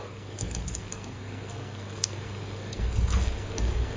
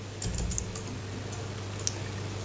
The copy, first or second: first